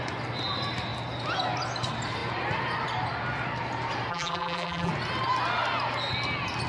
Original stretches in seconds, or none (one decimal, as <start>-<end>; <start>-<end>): 0.0-4.1; 4.9-6.7